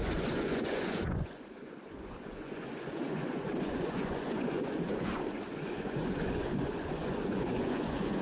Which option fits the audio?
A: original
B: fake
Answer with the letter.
B